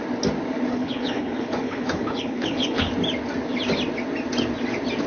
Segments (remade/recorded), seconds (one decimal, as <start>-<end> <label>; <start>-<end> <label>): 0.0-0.7 recorded; 0.7-2.9 remade; 2.9-5.1 recorded